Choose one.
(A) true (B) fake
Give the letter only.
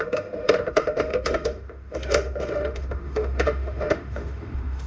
B